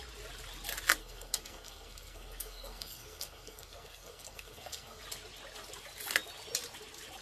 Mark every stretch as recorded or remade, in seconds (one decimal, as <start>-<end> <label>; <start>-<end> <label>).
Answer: 0.0-1.0 recorded; 1.0-5.0 remade; 5.0-7.2 recorded